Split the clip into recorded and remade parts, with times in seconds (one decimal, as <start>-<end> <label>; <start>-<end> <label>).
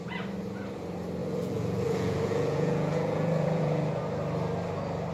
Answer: 0.0-1.2 recorded; 1.2-4.0 remade; 4.0-5.1 recorded